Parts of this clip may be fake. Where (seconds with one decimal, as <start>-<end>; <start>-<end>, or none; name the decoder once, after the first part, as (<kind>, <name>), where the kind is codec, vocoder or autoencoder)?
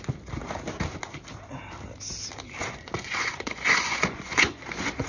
2.6-5.1 (vocoder, Vocos)